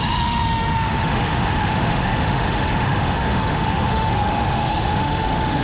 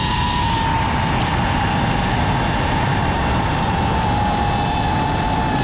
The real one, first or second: second